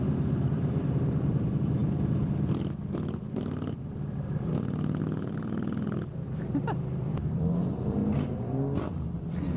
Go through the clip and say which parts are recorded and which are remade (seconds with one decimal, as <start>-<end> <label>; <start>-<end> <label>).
0.0-4.5 remade; 4.5-5.0 recorded; 5.0-8.0 remade; 8.0-8.8 recorded; 8.8-9.6 remade